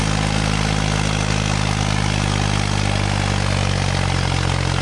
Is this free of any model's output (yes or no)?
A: yes